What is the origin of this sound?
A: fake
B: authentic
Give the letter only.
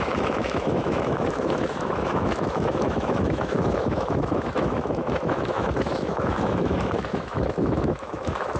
A